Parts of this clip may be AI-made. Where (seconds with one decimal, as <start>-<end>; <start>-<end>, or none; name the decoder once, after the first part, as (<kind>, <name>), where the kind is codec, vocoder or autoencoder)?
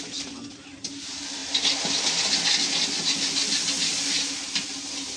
none